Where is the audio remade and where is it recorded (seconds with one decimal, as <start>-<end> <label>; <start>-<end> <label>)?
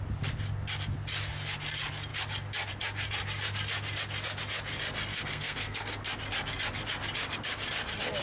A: 0.0-5.1 recorded; 5.1-6.0 remade; 6.0-8.2 recorded